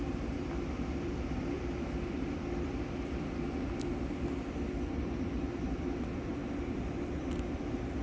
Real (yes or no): no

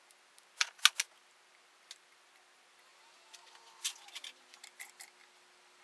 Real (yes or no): yes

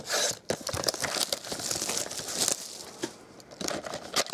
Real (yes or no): yes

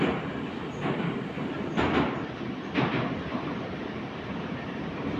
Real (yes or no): no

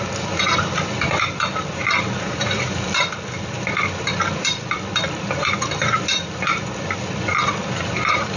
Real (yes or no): no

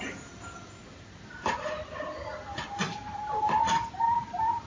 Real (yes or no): yes